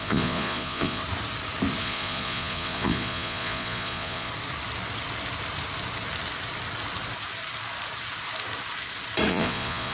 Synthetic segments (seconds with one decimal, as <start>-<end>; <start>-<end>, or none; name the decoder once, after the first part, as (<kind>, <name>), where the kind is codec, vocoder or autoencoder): 0.0-1.0 (vocoder, Vocos); 1.8-4.3; 9.3-9.9